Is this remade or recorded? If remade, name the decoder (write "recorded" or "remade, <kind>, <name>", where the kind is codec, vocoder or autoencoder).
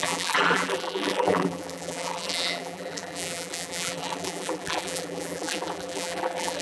remade, vocoder, BigVGAN v2